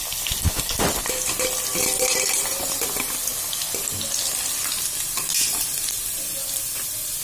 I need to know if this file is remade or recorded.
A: recorded